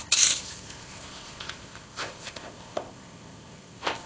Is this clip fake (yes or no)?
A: yes